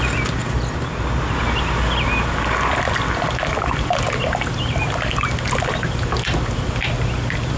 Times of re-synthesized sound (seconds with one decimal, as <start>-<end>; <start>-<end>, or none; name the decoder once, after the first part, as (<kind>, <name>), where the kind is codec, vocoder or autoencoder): none